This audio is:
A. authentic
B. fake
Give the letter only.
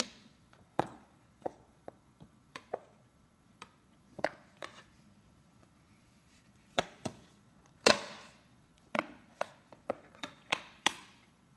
B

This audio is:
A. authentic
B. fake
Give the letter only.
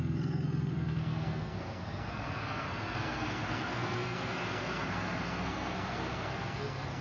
B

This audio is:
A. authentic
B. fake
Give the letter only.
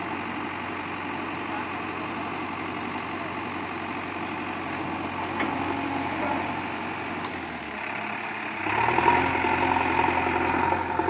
A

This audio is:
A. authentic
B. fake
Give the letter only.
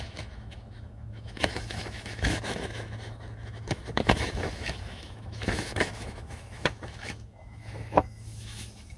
B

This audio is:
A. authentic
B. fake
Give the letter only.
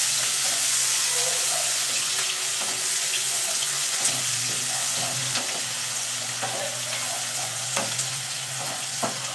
B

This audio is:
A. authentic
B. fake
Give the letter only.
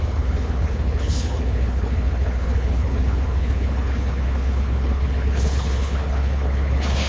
B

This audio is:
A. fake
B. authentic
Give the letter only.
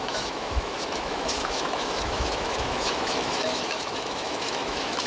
A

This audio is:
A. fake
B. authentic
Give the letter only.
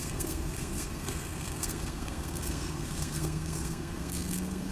A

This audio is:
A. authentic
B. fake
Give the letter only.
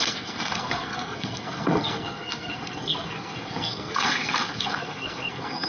B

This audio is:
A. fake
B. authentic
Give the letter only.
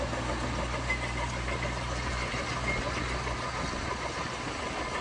B